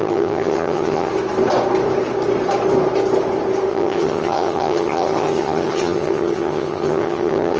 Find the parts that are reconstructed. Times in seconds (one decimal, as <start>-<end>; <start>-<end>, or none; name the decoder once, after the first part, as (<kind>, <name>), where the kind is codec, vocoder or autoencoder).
0.0-1.1 (vocoder, HiFi-GAN); 3.7-7.6